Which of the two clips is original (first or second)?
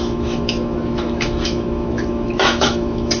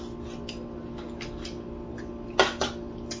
second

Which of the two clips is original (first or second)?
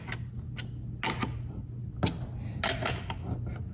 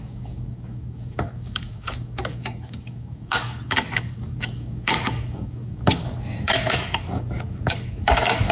first